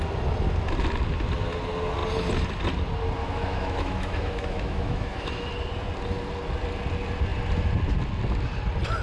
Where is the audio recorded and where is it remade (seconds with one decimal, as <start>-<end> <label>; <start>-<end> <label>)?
0.0-3.2 recorded; 3.2-5.5 remade; 5.5-9.0 recorded